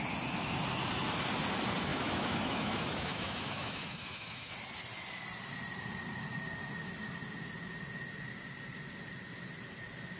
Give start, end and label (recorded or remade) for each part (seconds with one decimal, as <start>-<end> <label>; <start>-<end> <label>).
0.0-1.9 recorded; 1.9-4.5 remade; 4.5-10.2 recorded